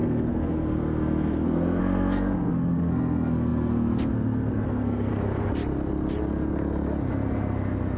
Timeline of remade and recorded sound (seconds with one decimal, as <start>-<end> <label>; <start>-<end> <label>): 0.0-5.1 remade; 5.1-8.0 recorded